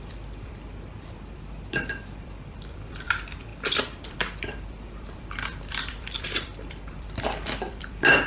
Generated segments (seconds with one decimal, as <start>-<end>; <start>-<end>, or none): 0.0-8.3